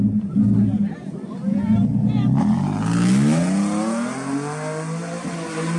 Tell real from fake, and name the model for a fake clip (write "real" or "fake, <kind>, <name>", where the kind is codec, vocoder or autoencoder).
real